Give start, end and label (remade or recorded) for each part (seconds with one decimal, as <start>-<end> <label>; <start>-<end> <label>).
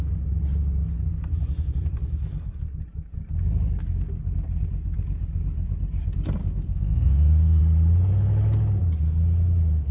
0.0-6.4 recorded; 6.4-7.6 remade; 7.6-9.9 recorded